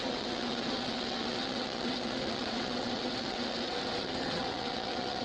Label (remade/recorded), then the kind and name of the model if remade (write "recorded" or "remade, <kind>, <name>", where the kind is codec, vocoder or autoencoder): remade, vocoder, WaveNeXt